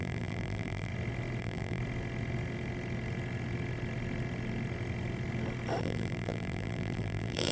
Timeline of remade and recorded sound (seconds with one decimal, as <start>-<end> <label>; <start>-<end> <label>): 0.0-0.9 remade; 0.9-1.4 recorded; 1.4-1.8 remade; 1.8-5.8 recorded; 5.8-7.5 remade